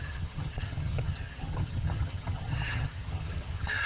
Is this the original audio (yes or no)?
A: no